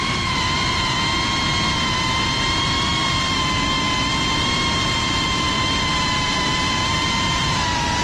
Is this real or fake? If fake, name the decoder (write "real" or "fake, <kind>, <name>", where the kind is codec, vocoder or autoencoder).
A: fake, vocoder, BigVGAN v2